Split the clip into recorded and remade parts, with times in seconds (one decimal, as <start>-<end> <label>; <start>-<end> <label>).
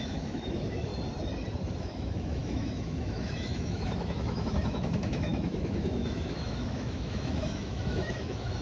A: 0.0-0.9 remade; 0.9-1.8 recorded; 1.8-8.6 remade